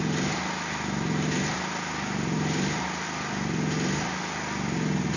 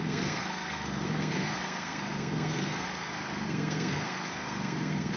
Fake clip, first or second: second